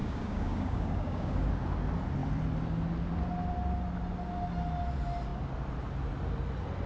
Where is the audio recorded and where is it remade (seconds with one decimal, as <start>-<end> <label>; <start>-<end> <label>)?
0.0-1.5 remade; 1.5-6.9 recorded